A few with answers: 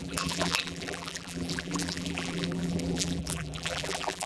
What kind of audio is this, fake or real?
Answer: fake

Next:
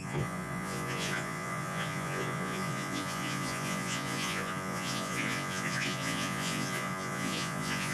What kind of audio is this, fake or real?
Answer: fake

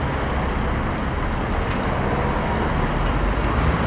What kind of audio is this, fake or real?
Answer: real